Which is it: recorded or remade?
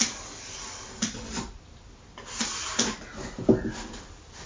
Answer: recorded